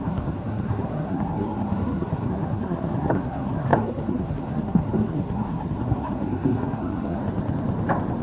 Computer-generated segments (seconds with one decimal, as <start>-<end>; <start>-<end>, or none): 0.0-7.2